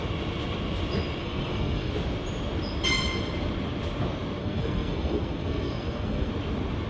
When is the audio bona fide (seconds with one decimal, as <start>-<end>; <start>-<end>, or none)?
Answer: 0.0-1.2; 1.9-4.4; 6.3-6.9